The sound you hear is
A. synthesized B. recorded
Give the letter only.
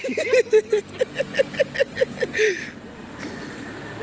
B